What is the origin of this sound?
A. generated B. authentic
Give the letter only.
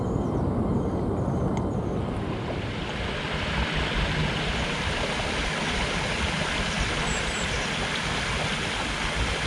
B